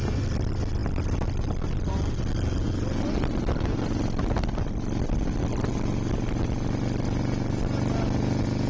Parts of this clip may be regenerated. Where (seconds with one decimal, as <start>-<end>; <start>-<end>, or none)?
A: none